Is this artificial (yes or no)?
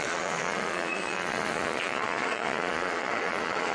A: yes